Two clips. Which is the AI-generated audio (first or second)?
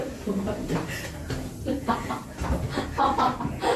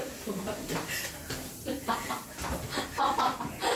second